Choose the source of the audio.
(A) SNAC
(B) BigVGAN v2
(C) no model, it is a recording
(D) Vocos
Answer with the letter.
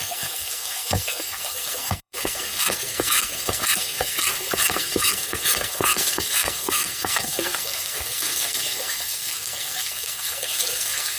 A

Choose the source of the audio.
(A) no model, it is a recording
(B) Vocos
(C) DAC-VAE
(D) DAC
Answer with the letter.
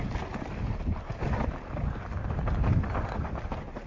A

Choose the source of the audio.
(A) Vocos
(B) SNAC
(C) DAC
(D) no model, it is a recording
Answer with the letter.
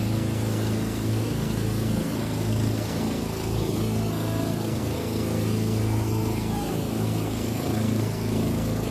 B